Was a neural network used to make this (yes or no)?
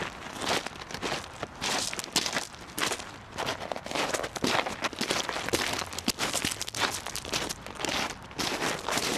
no